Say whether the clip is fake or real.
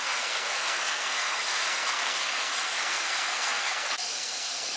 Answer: fake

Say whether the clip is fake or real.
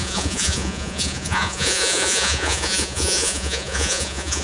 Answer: fake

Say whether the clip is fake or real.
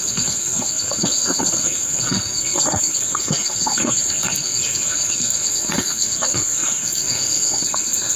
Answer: fake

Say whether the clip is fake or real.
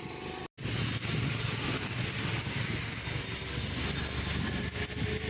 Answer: real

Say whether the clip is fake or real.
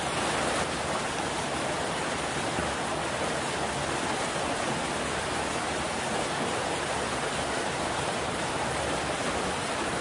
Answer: real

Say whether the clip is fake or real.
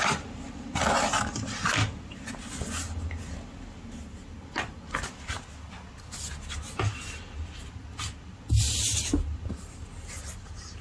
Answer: real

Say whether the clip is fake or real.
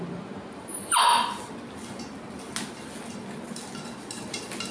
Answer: real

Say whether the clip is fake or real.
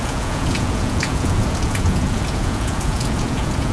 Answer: fake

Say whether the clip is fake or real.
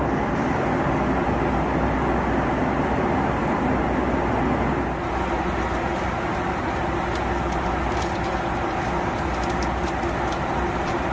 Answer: real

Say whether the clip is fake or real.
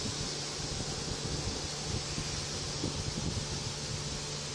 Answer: real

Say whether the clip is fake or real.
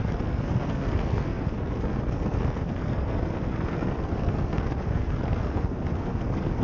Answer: fake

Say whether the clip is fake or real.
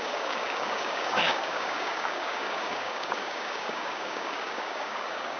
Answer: fake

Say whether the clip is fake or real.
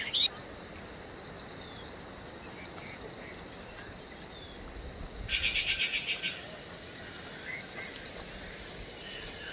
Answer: real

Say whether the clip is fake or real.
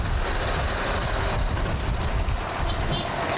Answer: real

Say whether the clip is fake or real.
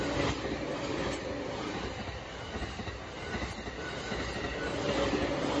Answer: real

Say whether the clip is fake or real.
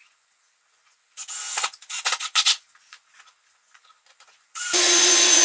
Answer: fake